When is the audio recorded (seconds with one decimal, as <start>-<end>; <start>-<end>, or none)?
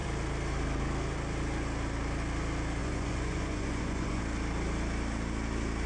0.0-2.8; 4.2-5.9